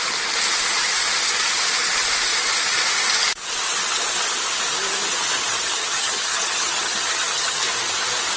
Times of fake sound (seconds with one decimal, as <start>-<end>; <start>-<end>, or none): 5.7-7.6